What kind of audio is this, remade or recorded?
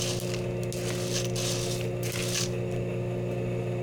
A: recorded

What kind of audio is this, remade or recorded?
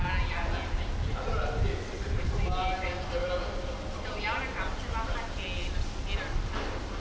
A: recorded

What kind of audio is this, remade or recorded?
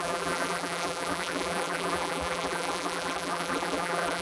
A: remade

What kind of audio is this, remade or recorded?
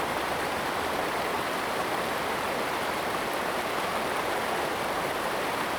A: remade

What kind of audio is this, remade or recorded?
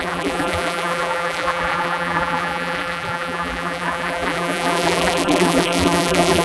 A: remade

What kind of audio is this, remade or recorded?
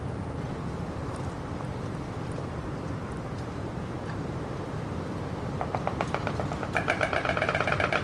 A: remade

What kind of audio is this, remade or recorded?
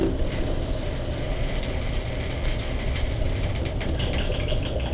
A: remade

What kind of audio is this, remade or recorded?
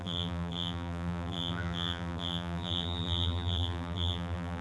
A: remade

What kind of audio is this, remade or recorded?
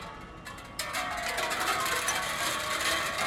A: remade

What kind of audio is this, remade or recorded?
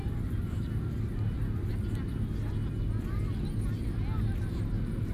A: recorded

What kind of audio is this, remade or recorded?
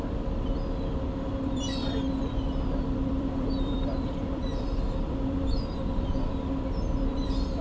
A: remade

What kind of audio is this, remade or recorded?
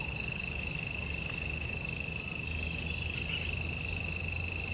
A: recorded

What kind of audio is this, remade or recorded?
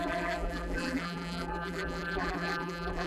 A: remade